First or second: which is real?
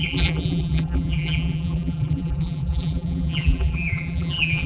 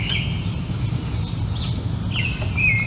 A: second